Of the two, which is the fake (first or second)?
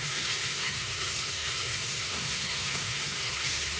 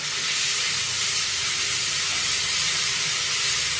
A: first